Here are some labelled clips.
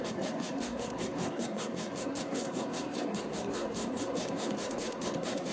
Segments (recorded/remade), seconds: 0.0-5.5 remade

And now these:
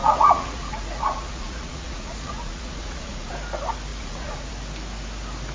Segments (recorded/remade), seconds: 0.0-3.3 remade; 3.3-3.9 recorded; 3.9-4.5 remade; 4.5-5.5 recorded

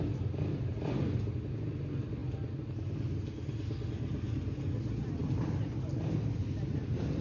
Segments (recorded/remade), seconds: 0.0-7.2 recorded

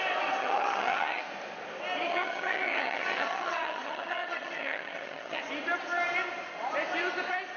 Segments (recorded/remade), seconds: 0.0-0.4 recorded; 0.4-1.2 remade; 1.2-2.1 recorded; 2.1-5.4 remade; 5.4-7.6 recorded

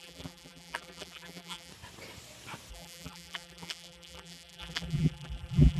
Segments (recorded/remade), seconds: 0.0-1.7 remade; 1.7-2.7 recorded; 2.7-5.8 remade

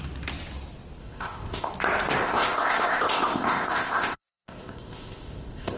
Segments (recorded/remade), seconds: 0.0-1.0 recorded; 1.0-1.7 remade; 1.7-2.2 recorded; 2.2-5.8 remade